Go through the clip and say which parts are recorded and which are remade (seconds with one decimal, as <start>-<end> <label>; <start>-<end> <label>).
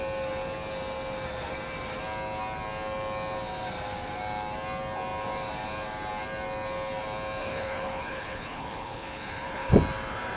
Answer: 0.0-7.4 recorded; 7.4-9.7 remade; 9.7-10.4 recorded